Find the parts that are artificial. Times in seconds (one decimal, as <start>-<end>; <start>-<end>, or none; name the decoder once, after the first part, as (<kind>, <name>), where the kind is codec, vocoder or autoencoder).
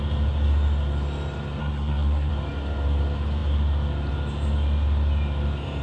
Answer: 1.6-2.3 (codec, SNAC)